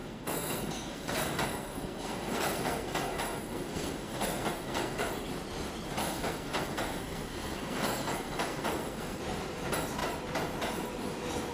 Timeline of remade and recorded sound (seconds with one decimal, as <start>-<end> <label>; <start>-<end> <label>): 0.0-5.1 remade; 5.1-6.0 recorded; 6.0-9.2 remade; 9.2-11.5 recorded